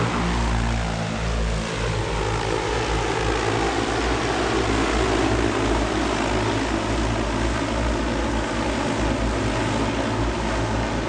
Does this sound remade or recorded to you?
recorded